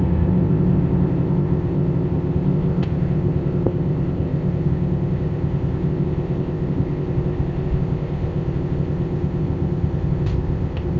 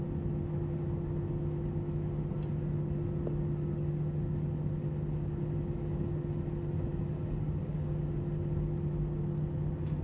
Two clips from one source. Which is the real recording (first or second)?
second